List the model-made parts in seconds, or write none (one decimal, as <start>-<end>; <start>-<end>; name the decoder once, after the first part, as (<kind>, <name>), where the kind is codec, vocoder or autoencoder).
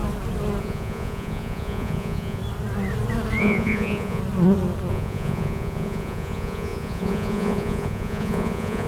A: 0.6-2.4 (vocoder, Vocos); 3.4-4.2; 4.9-8.9